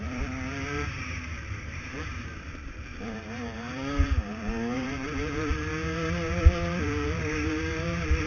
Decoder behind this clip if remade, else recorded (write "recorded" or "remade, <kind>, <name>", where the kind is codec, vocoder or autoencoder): remade, vocoder, BigVGAN v2